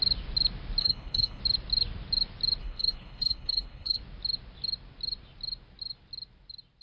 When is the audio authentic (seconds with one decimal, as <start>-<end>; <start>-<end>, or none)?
0.0-0.8; 1.4-2.6; 4.0-6.8